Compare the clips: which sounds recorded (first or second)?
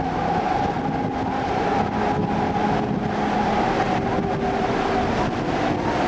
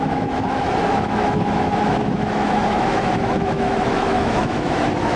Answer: first